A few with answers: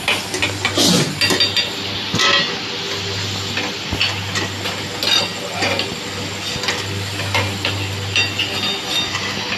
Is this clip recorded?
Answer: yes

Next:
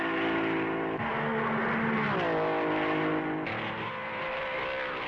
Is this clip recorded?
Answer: yes